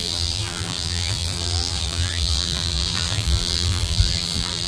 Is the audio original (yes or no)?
no